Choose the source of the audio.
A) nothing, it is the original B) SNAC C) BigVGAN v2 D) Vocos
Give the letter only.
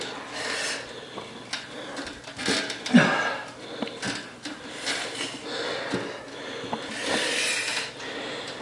A